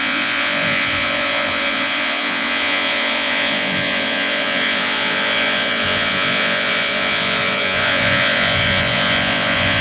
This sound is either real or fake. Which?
fake